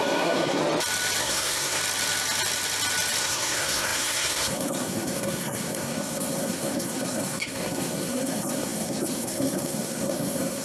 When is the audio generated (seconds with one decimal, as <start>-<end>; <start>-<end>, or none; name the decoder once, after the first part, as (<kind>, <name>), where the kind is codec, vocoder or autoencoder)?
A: 0.0-0.6 (codec, SNAC); 1.2-1.8; 3.2-10.6

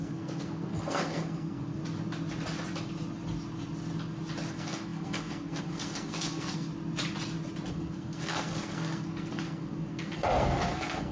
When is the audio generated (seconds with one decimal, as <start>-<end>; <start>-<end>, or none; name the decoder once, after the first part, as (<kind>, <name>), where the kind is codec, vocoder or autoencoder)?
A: 0.0-1.8 (codec, SNAC); 4.5-6.7; 7.7-11.1